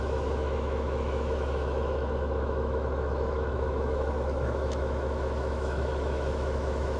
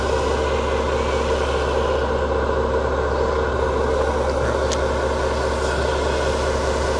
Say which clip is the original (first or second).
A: second